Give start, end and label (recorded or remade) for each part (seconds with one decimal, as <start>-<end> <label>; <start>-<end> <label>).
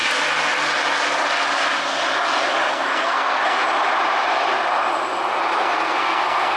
0.0-2.7 recorded; 2.7-3.6 remade; 3.6-5.6 recorded; 5.6-6.6 remade